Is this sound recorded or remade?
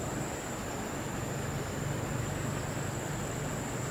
recorded